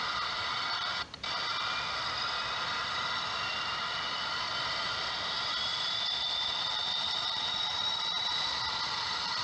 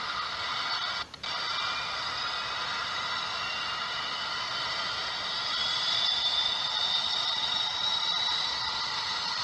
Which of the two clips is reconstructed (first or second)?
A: first